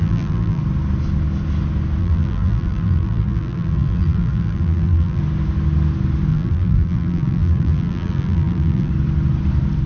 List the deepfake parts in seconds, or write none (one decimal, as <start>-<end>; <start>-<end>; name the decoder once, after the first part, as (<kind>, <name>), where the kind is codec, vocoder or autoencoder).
0.0-0.6 (vocoder, BigVGAN v2); 2.0-5.2; 6.3-8.9

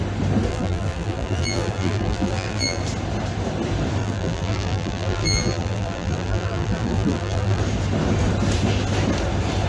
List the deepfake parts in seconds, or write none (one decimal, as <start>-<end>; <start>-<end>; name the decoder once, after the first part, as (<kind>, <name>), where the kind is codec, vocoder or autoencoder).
0.5-2.8 (vocoder, BigVGAN v2); 4.0-7.6